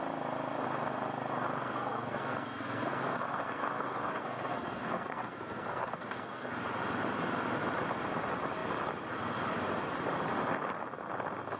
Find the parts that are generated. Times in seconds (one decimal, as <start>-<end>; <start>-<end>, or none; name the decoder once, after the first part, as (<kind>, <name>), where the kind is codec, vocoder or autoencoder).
1.6-6.5 (codec, SNAC)